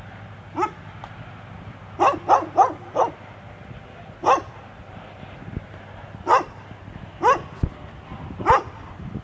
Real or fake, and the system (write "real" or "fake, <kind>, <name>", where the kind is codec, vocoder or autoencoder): real